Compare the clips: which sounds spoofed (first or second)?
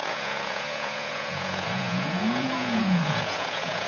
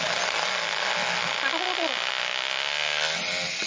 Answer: first